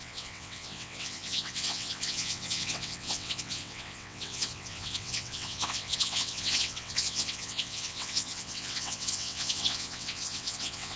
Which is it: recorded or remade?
remade